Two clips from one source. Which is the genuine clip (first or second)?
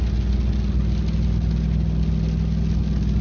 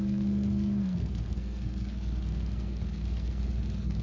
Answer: first